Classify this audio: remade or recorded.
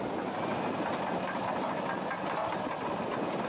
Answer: recorded